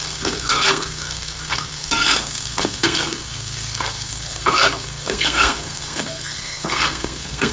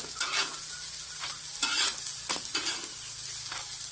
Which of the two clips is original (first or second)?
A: second